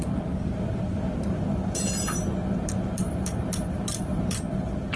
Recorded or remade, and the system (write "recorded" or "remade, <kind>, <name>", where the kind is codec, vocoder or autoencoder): remade, vocoder, BigVGAN v2